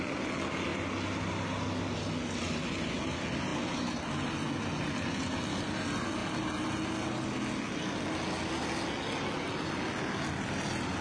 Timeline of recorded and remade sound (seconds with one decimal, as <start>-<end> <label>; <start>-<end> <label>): 0.0-11.0 recorded